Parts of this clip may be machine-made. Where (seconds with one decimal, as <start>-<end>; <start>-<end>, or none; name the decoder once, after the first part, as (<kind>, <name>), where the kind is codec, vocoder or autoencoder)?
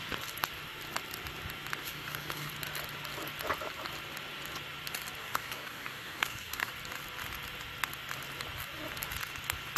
1.8-2.5 (codec, DAC); 5.2-6.7